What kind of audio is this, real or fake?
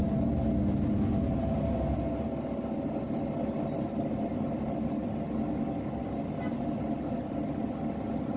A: real